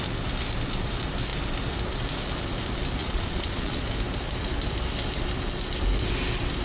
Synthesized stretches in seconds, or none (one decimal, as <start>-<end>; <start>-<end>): 3.0-3.9